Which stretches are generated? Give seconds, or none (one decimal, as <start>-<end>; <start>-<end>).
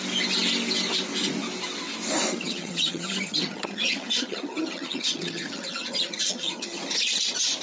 2.3-6.8